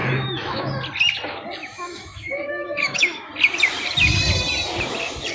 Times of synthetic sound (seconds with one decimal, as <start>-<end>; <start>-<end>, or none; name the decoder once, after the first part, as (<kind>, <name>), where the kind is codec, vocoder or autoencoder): 0.0-0.7 (autoencoder, DAC-VAE); 1.6-3.3